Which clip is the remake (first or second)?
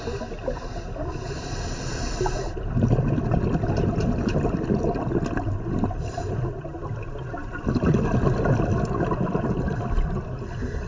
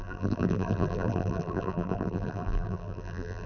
second